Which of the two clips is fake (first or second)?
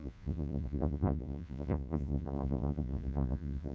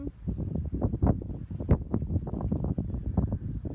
first